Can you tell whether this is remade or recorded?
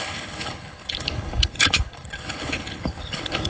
remade